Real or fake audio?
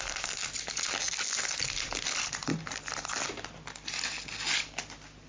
real